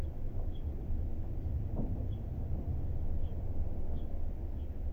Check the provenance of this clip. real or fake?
real